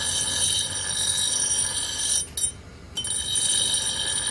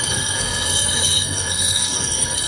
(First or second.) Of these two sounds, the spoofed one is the second